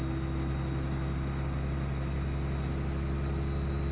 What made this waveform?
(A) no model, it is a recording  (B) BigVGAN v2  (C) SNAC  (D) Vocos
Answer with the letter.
A